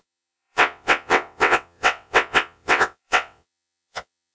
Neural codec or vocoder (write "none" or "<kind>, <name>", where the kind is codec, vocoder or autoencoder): vocoder, WaveNeXt